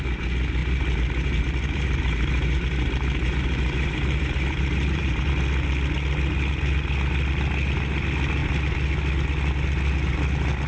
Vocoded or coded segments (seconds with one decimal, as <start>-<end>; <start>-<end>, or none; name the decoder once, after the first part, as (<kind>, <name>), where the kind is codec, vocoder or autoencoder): 0.6-5.3 (vocoder, BigVGAN v2)